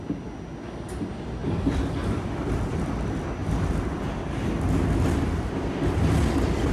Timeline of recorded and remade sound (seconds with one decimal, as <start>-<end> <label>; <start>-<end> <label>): 0.0-1.4 recorded; 1.4-1.9 remade; 1.9-6.7 recorded